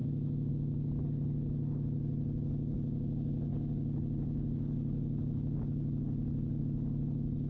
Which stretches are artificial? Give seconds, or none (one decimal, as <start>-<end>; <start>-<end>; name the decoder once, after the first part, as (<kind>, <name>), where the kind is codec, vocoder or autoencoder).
none